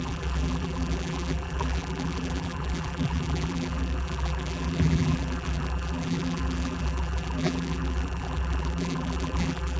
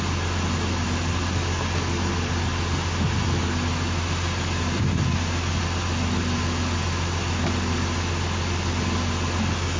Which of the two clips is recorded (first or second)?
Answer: second